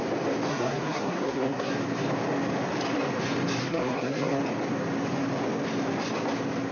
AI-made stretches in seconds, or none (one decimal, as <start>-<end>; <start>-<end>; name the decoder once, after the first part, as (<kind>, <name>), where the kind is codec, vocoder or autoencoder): 0.5-1.7 (codec, SNAC); 3.6-4.4